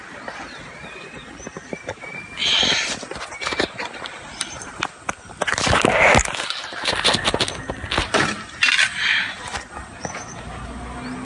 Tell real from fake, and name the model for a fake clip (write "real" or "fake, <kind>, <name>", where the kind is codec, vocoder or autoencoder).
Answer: real